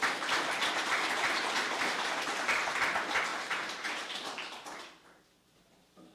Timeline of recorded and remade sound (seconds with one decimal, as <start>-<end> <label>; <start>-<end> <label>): 0.0-3.3 recorded; 3.3-5.2 remade; 5.2-6.1 recorded

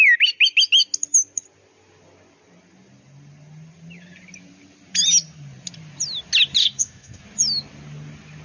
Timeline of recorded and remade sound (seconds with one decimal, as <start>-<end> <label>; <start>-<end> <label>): 0.0-6.6 recorded; 6.6-7.2 remade; 7.2-8.4 recorded

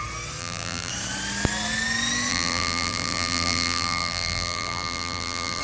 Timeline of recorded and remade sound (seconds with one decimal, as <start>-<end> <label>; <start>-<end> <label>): 0.0-0.4 recorded; 0.4-0.9 remade; 0.9-2.3 recorded; 2.3-5.6 remade

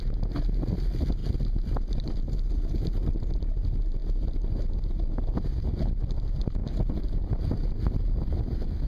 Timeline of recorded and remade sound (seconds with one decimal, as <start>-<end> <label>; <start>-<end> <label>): 0.0-8.9 recorded